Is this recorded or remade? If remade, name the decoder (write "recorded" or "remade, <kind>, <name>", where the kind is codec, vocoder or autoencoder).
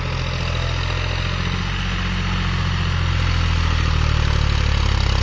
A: recorded